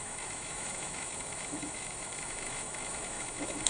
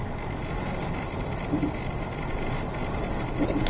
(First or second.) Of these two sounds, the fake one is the first